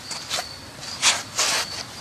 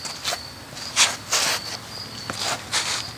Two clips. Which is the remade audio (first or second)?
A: first